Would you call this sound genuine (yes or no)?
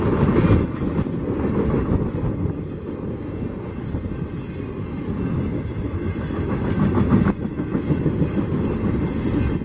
yes